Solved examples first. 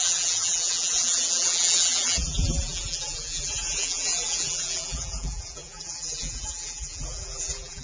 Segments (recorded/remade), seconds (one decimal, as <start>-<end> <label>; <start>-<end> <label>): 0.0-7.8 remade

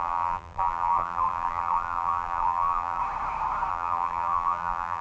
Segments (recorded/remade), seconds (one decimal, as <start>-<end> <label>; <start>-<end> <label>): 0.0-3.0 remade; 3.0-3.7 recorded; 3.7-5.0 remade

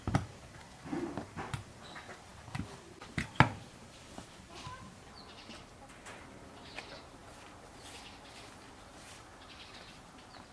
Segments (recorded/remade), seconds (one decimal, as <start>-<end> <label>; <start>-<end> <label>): 0.0-2.3 remade; 2.3-3.1 recorded; 3.1-7.2 remade; 7.2-8.8 recorded; 8.8-9.3 remade; 9.3-9.9 recorded; 9.9-10.5 remade

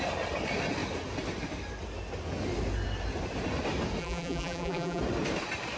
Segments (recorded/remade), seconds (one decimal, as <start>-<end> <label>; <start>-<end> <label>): 0.0-4.0 recorded; 4.0-5.0 remade; 5.0-5.8 recorded

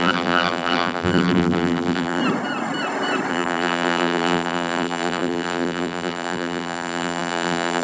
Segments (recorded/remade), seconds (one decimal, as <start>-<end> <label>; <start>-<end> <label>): 0.0-2.2 remade; 2.2-3.3 recorded; 3.3-7.8 remade